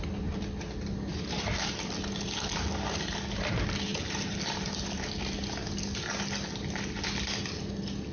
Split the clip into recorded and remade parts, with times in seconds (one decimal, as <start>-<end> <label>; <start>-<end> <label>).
0.0-8.1 recorded